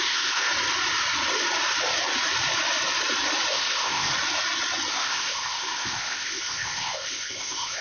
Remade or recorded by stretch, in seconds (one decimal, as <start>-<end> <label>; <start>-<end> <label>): 0.0-0.5 remade; 0.5-3.5 recorded; 3.5-4.1 remade; 4.1-4.9 recorded; 4.9-7.8 remade